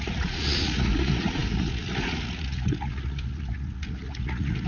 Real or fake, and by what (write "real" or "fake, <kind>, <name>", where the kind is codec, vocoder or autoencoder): fake, vocoder, Vocos